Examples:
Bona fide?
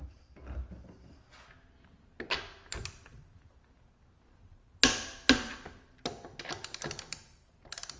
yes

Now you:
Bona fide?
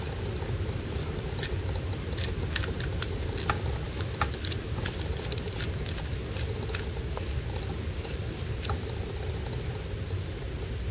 yes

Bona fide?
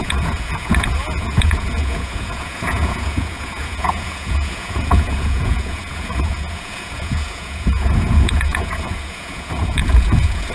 no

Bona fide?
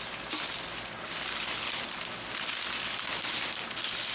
yes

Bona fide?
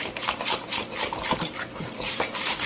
no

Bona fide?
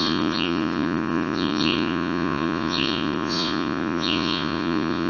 no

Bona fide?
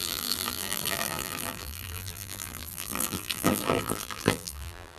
no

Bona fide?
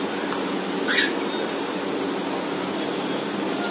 yes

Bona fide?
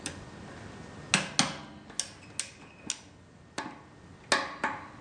yes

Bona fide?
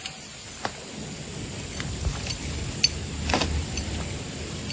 yes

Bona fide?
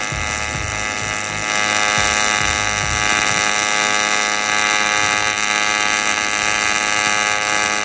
yes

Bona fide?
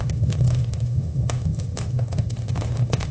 no